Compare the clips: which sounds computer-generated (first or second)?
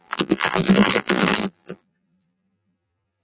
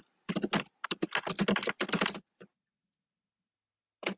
first